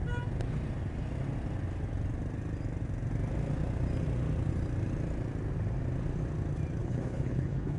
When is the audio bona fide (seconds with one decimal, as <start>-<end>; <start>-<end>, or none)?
0.0-6.8